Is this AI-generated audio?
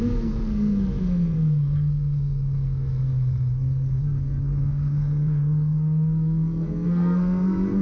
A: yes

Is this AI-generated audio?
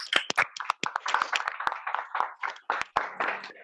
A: no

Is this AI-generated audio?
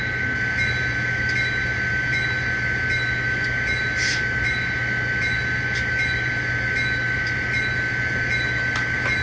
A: no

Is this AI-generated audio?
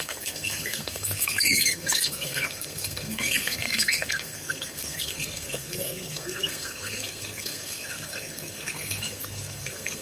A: yes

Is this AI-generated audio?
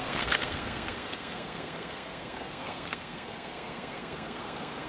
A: yes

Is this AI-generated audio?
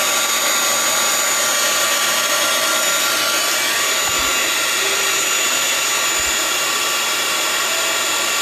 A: no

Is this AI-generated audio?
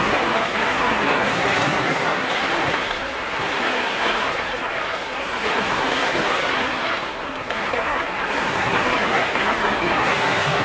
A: yes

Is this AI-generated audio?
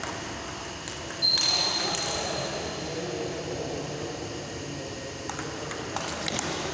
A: no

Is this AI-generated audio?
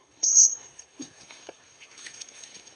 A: yes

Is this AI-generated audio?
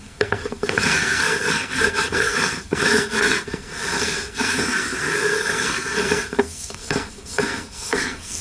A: yes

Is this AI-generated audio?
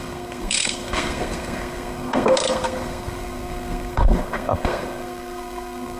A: yes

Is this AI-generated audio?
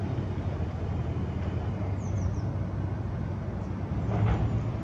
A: no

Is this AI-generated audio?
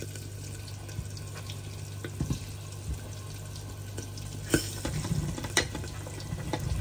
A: no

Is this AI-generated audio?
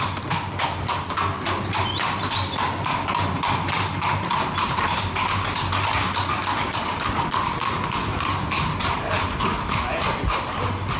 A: no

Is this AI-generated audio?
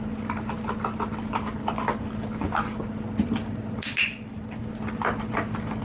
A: no